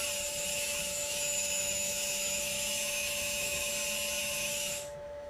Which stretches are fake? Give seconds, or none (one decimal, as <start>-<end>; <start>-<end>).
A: 0.5-3.7; 4.2-5.3